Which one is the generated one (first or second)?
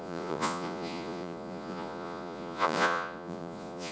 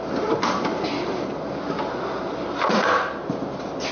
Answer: first